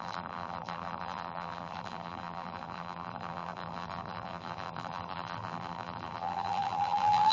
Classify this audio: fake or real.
fake